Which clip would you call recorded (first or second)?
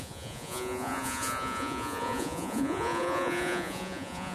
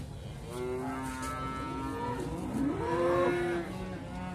second